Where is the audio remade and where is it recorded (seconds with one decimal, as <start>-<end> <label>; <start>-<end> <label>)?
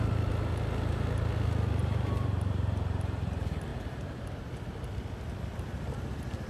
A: 0.0-1.8 recorded; 1.8-3.3 remade; 3.3-3.7 recorded; 3.7-4.3 remade; 4.3-6.5 recorded